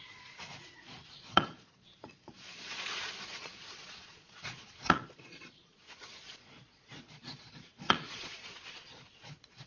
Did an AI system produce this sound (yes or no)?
yes